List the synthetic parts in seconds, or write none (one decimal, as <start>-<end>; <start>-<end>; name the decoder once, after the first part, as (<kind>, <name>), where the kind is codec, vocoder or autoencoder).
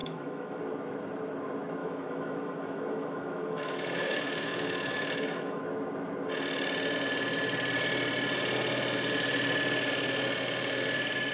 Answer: 0.0-0.6 (autoencoder, DAC-VAE); 1.8-5.6